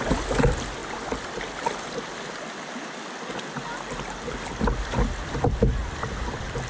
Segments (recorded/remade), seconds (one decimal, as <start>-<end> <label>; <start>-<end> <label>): 0.0-0.8 remade; 0.8-4.8 recorded; 4.8-6.7 remade